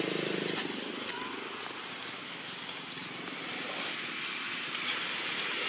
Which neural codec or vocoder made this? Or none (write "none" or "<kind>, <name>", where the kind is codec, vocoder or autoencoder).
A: none